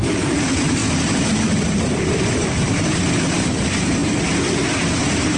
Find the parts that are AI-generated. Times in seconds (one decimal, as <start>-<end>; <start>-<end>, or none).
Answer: 0.0-0.8; 1.7-5.4